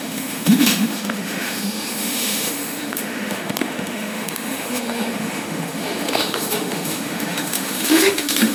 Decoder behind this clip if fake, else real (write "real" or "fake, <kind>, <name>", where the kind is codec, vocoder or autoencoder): fake, autoencoder, DAC-VAE